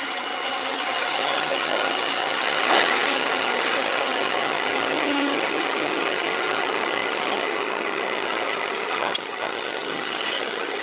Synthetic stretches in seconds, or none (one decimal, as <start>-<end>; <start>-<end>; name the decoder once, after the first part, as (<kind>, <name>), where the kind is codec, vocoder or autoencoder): 0.0-10.8 (vocoder, HiFi-GAN)